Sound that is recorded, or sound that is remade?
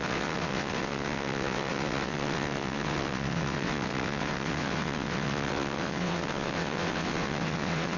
remade